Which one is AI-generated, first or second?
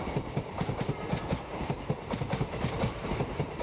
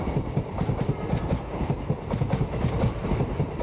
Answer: first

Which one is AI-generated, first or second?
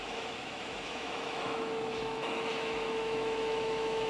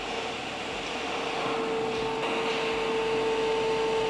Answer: first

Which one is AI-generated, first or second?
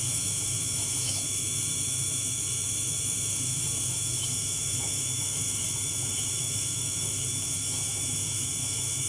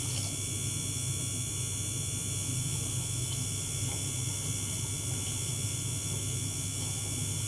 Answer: first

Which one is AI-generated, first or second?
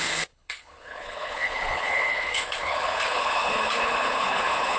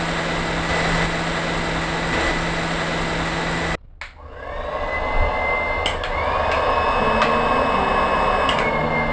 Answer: first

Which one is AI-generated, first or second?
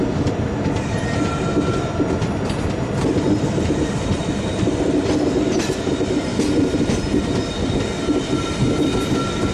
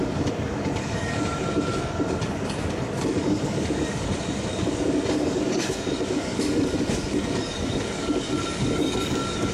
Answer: second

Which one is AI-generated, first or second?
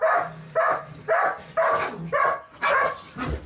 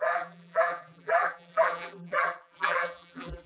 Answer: second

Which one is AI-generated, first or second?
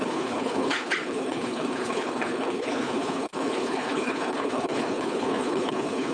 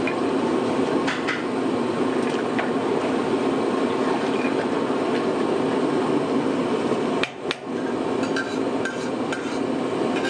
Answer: first